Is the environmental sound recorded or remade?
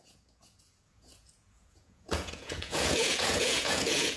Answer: remade